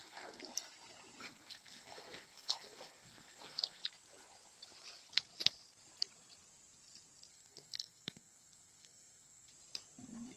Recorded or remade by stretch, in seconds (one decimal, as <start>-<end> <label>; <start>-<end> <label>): 0.0-0.4 remade; 0.4-1.2 recorded; 1.2-3.8 remade; 3.8-7.3 recorded; 7.3-9.5 remade; 9.5-10.4 recorded